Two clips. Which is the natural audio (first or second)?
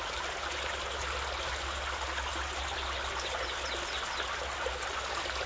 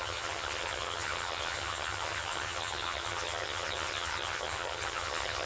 first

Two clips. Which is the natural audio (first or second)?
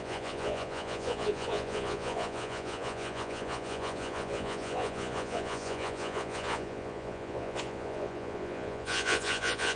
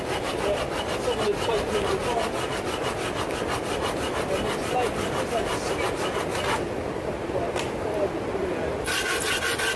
second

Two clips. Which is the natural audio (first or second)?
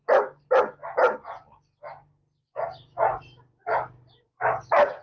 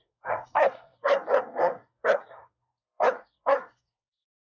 first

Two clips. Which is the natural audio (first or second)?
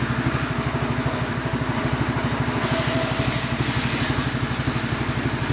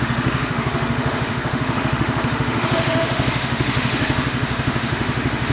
first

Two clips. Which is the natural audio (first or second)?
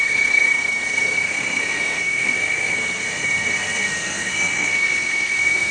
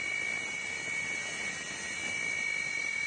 second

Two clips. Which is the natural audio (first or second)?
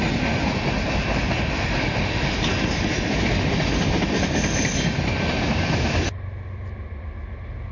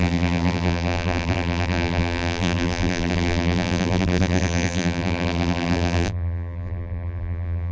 first